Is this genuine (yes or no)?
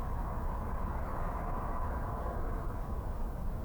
no